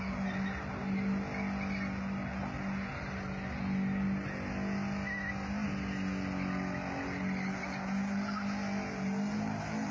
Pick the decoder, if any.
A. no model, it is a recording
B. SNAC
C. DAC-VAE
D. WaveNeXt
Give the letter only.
A